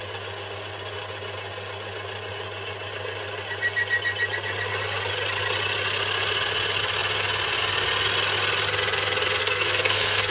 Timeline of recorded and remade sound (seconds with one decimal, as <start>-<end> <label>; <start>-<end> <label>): 0.0-9.4 recorded; 9.4-10.3 remade